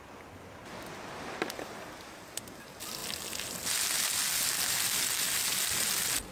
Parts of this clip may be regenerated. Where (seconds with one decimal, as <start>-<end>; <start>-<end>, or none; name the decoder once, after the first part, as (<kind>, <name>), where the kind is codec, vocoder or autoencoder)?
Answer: none